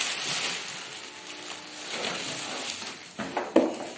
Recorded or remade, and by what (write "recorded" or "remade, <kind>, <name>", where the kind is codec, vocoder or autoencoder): recorded